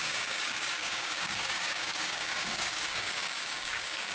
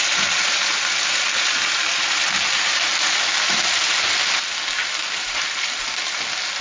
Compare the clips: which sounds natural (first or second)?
second